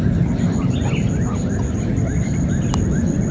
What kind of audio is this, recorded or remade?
recorded